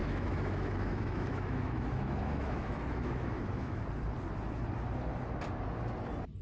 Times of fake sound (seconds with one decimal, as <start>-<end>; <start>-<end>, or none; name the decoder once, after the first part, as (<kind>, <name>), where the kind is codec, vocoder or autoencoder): 0.0-3.8 (autoencoder, DAC-VAE)